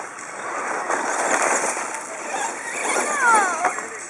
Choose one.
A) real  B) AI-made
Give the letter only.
A